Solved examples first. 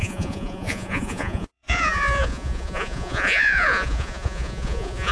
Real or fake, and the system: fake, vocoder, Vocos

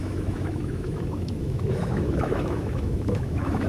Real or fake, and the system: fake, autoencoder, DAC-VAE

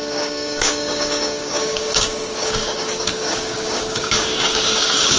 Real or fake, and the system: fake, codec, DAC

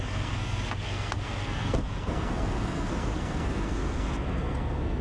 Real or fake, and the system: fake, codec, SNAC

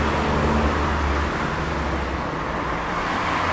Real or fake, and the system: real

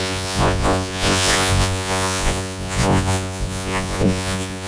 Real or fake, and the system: fake, vocoder, Vocos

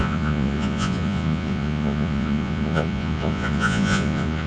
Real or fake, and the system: fake, vocoder, Vocos